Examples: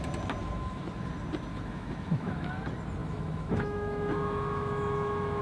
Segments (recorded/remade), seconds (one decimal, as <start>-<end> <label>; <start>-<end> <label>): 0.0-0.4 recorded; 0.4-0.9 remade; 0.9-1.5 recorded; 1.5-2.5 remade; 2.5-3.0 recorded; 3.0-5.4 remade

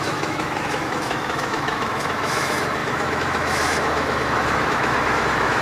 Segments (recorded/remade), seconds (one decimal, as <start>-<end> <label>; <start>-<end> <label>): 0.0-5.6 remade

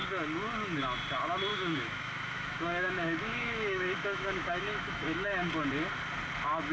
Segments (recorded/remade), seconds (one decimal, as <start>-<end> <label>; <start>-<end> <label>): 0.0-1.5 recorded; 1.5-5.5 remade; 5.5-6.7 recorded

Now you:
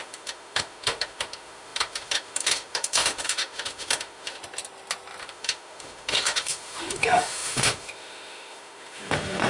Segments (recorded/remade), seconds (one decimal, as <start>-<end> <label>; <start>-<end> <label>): 0.0-4.4 remade; 4.4-5.2 recorded; 5.2-9.5 remade